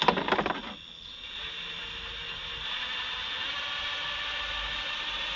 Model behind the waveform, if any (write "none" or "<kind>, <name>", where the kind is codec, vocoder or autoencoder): none